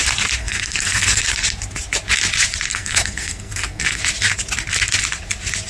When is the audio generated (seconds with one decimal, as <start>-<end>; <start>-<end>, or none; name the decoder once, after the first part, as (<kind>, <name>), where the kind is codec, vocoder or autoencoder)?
0.4-1.2 (codec, SNAC); 2.7-4.0